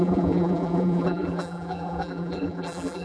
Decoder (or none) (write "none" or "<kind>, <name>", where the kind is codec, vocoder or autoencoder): vocoder, BigVGAN v2